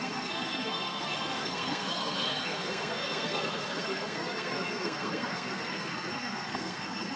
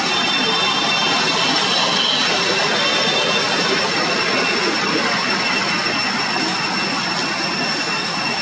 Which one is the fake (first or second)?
first